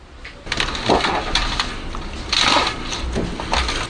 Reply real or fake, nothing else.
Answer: real